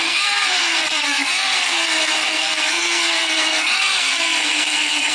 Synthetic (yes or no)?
yes